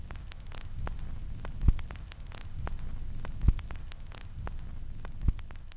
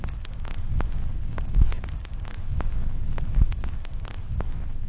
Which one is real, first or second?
first